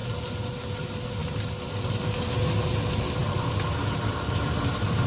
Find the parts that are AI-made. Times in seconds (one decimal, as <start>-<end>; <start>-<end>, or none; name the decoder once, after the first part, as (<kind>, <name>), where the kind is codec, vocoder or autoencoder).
none